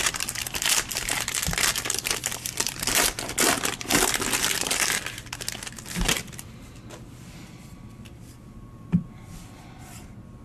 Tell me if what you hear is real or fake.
fake